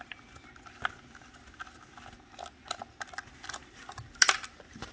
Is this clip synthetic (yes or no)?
no